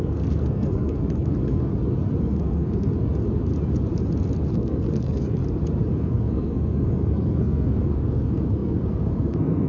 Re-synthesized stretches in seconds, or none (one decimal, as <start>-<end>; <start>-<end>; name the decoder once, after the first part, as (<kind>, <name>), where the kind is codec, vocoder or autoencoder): 0.0-1.7 (codec, SNAC); 2.2-2.9; 4.5-5.4; 6.0-9.7